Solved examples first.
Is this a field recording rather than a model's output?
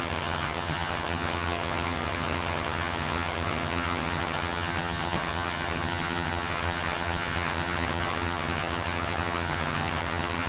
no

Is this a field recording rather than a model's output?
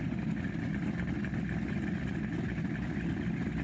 yes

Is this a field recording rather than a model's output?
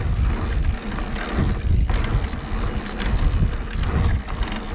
yes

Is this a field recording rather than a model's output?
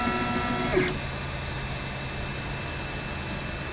yes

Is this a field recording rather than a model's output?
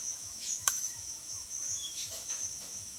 no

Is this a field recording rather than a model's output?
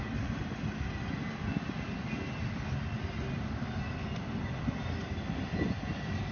yes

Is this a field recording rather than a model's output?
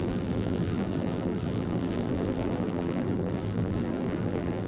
no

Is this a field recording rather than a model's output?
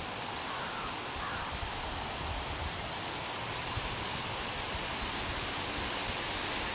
yes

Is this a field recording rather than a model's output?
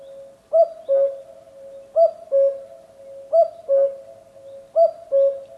yes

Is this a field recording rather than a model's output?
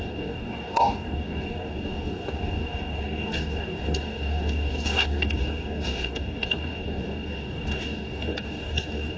no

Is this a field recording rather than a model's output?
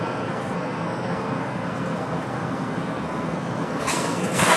no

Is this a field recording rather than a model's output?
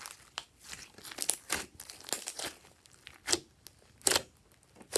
yes